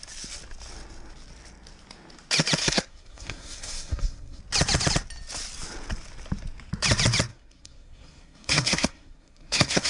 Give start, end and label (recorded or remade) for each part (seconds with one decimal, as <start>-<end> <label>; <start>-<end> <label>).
0.0-2.6 recorded; 2.6-4.4 remade; 4.4-7.3 recorded; 7.3-9.9 remade